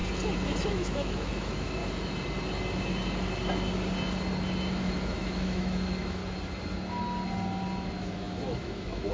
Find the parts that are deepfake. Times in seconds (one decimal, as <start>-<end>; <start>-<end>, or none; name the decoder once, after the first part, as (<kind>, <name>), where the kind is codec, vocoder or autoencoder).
0.7-1.8 (autoencoder, DAC-VAE); 4.8-6.2; 8.0-9.1